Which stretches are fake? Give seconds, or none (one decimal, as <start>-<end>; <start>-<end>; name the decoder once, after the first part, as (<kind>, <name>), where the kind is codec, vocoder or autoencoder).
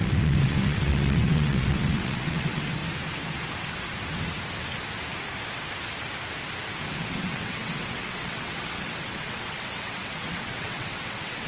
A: 0.0-2.8 (vocoder, WaveNeXt); 7.0-11.5